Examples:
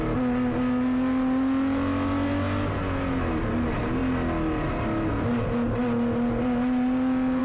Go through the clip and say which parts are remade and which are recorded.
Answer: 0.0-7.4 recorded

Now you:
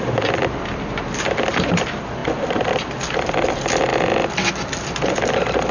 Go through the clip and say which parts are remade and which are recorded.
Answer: 0.0-5.7 recorded

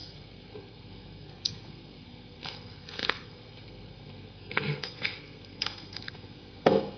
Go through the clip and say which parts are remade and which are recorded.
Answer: 0.0-7.0 remade

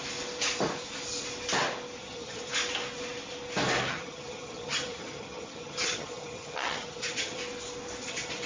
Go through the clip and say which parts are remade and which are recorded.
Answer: 0.0-2.0 recorded; 2.0-2.5 remade; 2.5-3.9 recorded; 3.9-7.4 remade; 7.4-8.1 recorded; 8.1-8.5 remade

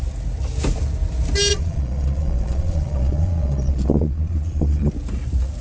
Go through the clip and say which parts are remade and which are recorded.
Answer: 0.0-1.5 recorded; 1.5-4.9 remade; 4.9-5.6 recorded

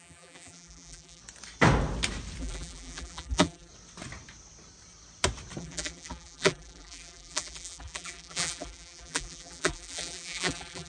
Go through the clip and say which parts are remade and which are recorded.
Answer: 0.0-1.2 remade; 1.2-2.4 recorded; 2.4-3.7 remade; 3.7-5.6 recorded; 5.6-10.9 remade

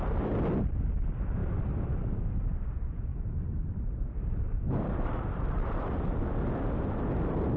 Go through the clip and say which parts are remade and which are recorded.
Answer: 0.0-1.4 recorded; 1.4-2.1 remade; 2.1-3.1 recorded; 3.1-6.3 remade; 6.3-7.6 recorded